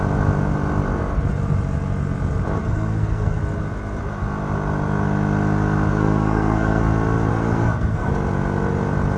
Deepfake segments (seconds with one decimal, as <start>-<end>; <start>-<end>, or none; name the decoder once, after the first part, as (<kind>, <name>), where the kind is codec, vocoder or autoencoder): 2.6-3.4 (codec, SNAC); 5.9-6.8; 7.3-8.1